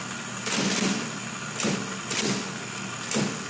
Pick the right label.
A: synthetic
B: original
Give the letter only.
B